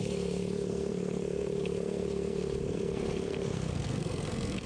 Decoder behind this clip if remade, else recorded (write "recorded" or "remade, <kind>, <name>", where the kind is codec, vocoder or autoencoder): remade, codec, SNAC